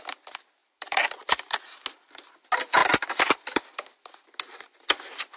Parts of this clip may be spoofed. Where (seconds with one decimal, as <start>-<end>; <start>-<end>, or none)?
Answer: 0.6-1.6